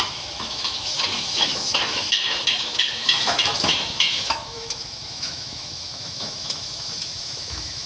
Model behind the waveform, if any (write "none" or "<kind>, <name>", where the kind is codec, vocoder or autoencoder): autoencoder, DAC-VAE